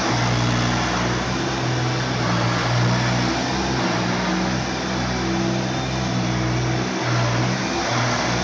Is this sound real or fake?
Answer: real